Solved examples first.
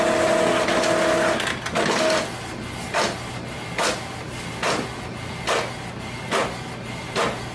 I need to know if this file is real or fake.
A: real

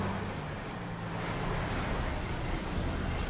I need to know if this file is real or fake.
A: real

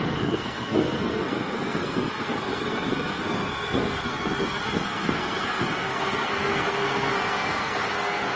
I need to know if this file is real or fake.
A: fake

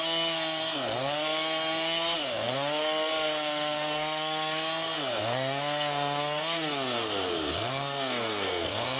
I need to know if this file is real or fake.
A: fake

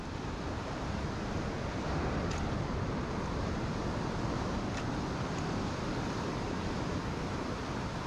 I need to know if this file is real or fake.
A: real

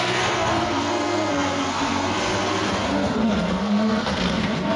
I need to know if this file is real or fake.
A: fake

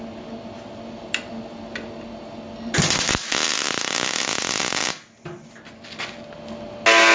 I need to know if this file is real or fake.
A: real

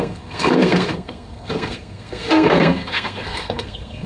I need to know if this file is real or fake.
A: fake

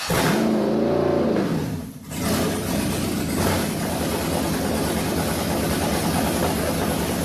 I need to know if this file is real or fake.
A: real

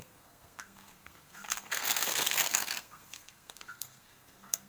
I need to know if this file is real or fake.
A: fake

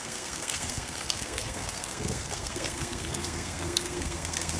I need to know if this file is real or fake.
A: fake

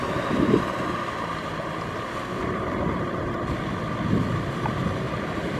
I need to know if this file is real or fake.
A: real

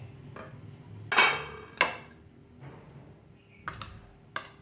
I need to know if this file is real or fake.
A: real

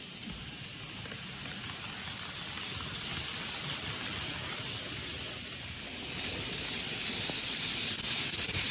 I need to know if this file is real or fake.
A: real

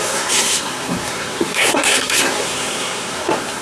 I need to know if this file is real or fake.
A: fake